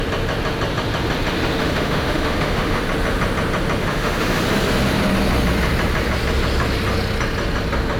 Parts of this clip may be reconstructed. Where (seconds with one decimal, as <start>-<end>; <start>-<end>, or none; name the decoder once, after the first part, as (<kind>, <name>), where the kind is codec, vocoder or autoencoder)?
1.6-2.8 (autoencoder, DAC-VAE); 3.8-4.4

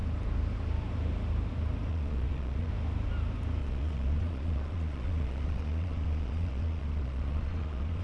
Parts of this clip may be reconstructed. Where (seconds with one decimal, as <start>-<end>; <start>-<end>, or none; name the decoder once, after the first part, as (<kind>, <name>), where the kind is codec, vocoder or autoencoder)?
1.9-2.7 (vocoder, Vocos); 3.6-8.0